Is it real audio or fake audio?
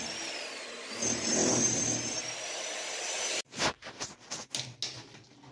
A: real